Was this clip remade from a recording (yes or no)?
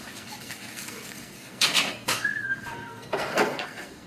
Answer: yes